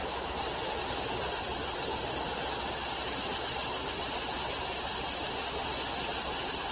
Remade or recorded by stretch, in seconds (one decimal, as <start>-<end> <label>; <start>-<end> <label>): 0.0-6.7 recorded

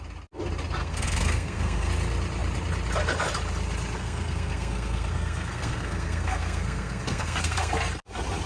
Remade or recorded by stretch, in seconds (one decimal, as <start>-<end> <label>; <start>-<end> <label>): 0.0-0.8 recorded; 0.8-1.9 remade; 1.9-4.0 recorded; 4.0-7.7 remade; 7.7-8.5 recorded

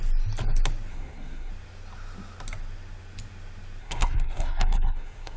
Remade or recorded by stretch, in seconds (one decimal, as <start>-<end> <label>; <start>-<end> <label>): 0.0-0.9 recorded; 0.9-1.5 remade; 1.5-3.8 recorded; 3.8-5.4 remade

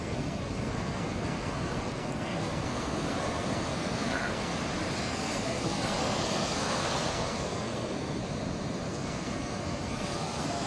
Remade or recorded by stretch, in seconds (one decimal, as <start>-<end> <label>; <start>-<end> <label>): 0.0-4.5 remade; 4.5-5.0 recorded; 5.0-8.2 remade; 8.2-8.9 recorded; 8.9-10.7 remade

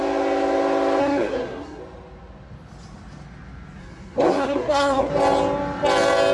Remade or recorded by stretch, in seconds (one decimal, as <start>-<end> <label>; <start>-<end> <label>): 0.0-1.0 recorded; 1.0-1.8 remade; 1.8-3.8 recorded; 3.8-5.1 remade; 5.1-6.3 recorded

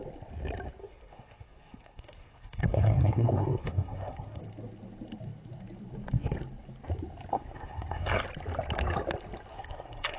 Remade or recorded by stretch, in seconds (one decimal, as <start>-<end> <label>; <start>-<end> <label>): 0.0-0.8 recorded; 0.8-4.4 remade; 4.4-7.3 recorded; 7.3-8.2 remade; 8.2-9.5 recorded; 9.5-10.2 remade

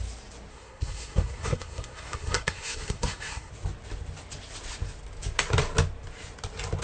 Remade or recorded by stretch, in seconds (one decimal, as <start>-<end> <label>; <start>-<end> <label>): 0.0-0.5 recorded; 0.5-3.5 remade; 3.5-6.8 recorded

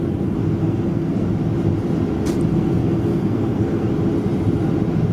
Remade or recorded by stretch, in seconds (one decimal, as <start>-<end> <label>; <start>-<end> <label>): 0.0-0.6 recorded; 0.6-1.3 remade; 1.3-2.5 recorded; 2.5-3.9 remade; 3.9-5.1 recorded